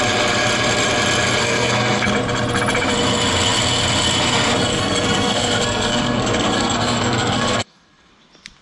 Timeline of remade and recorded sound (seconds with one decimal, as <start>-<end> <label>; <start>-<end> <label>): 0.0-1.4 recorded; 1.4-2.0 remade; 2.0-4.7 recorded; 4.7-8.1 remade; 8.1-8.6 recorded

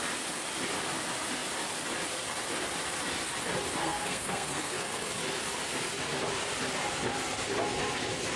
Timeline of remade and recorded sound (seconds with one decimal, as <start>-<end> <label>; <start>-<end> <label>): 0.0-3.8 recorded; 3.8-5.1 remade; 5.1-8.4 recorded

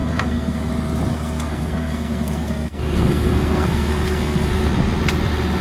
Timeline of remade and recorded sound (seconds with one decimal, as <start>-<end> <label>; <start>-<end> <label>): 0.0-0.7 remade; 0.7-1.1 recorded; 1.1-4.5 remade; 4.5-5.6 recorded

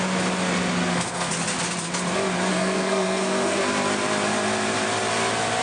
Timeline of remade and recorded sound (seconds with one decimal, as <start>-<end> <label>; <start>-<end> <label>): 0.0-0.8 recorded; 0.8-1.3 remade; 1.3-2.5 recorded; 2.5-3.6 remade; 3.6-5.6 recorded